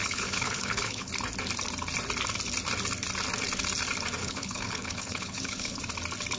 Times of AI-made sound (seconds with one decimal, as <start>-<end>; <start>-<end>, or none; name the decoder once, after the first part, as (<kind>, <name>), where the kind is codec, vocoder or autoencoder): 0.0-1.1 (codec, HILCodec); 4.2-5.8